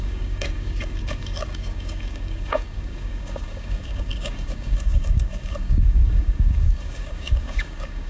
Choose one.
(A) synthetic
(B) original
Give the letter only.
A